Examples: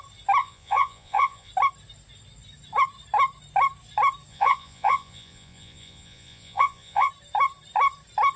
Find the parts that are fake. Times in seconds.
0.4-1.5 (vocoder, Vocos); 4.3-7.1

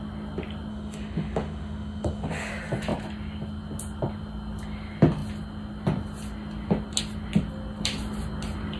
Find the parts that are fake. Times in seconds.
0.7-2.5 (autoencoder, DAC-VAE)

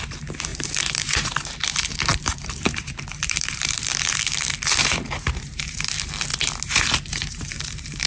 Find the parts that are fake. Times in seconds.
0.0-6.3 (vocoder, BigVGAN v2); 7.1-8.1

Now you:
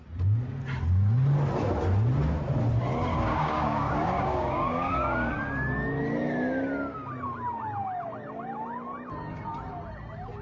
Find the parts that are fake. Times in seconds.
3.1-5.3 (codec, DAC)

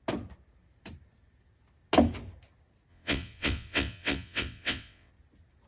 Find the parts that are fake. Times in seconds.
2.9-5.1 (vocoder, WaveNeXt)

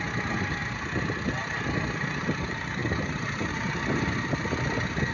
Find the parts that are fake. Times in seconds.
none

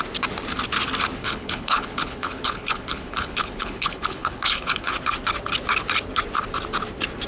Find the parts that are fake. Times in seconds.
1.2-4.9 (codec, HILCodec)